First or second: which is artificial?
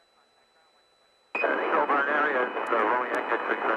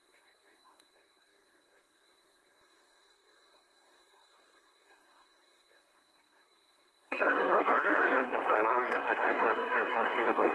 second